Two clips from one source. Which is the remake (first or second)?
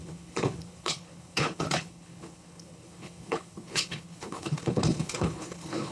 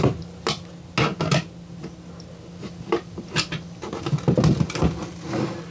first